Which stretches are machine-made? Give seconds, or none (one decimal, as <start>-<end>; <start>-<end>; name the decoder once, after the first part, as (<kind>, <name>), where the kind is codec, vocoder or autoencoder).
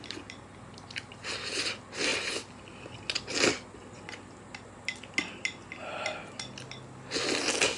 none